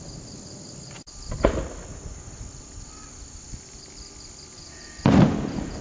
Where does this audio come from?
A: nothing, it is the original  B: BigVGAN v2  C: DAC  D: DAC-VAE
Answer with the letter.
A